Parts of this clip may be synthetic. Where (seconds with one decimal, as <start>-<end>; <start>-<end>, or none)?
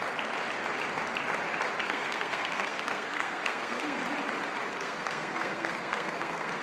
1.8-4.0; 4.7-6.6